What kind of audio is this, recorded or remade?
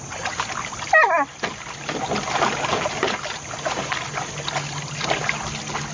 recorded